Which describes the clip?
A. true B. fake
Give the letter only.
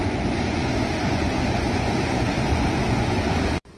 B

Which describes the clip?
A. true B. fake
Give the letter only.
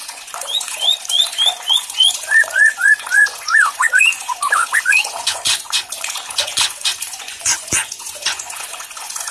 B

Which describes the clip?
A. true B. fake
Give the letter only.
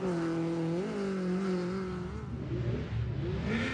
A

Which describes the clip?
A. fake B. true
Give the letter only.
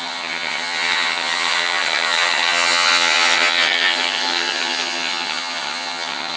A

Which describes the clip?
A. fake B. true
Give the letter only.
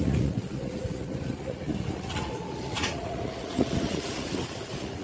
A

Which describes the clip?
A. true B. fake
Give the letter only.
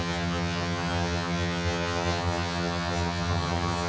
B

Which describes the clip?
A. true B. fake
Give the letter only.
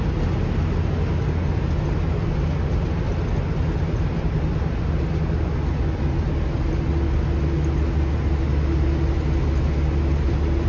A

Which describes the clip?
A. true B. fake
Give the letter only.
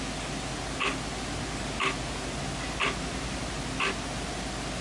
A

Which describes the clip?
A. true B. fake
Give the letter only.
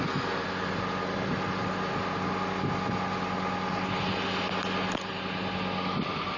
A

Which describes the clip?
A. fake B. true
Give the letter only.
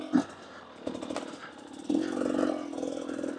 B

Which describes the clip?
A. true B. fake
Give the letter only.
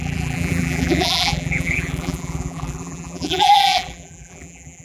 B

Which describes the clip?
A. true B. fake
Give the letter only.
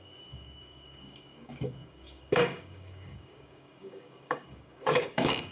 B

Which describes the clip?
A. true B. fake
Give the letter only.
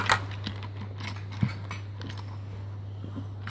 A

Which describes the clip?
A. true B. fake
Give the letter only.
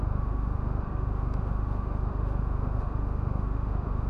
B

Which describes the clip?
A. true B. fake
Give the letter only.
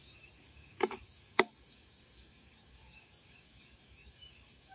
B